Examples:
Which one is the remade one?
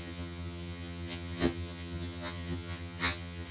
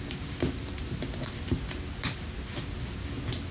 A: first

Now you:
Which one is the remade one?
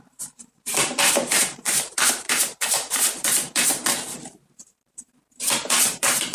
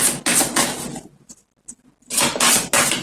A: first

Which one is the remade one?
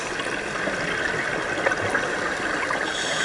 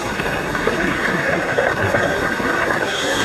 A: second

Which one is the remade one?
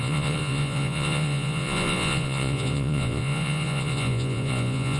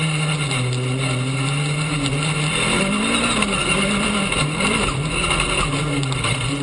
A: first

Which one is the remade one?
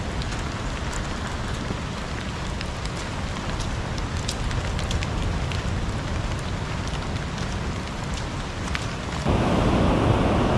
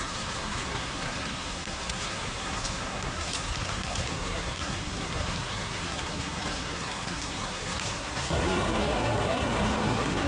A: second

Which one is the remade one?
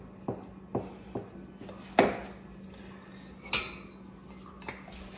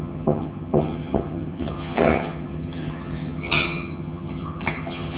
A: second